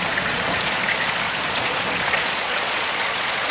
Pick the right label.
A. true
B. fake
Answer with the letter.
B